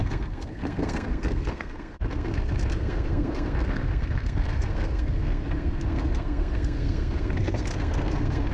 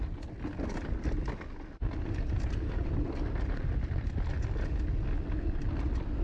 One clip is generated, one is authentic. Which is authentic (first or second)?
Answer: second